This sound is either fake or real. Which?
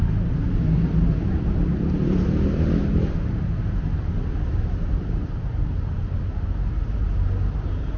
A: fake